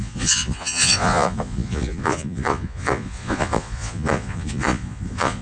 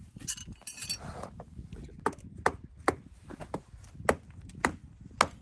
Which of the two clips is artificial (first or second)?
first